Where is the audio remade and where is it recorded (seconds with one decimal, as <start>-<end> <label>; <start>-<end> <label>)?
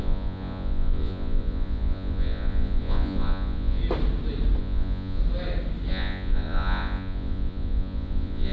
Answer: 0.0-3.8 remade; 3.8-4.6 recorded; 4.6-5.2 remade; 5.2-5.9 recorded; 5.9-8.5 remade